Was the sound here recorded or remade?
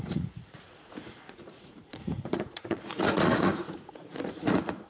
remade